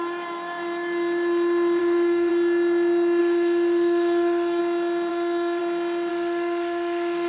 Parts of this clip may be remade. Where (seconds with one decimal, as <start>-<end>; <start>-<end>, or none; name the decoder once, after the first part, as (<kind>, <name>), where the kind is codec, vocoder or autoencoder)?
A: 1.8-2.3 (codec, DAC); 3.2-4.6; 5.1-5.6; 6.1-7.3